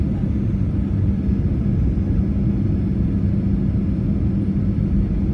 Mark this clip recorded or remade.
recorded